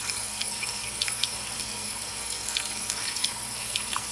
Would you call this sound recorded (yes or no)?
no